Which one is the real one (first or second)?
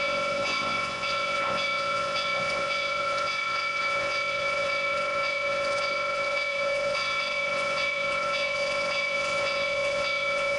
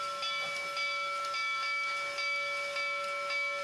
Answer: second